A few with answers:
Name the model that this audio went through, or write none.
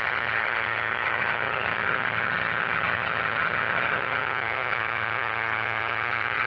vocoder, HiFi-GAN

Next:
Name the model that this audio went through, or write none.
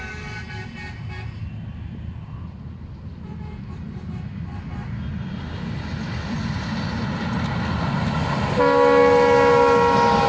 none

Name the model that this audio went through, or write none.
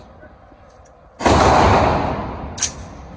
none